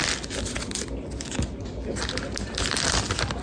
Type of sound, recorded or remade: recorded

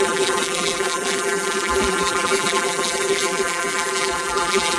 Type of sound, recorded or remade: remade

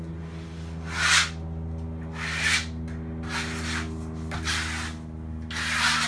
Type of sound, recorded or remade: recorded